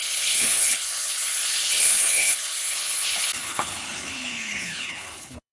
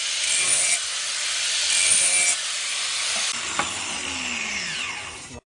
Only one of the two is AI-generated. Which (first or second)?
first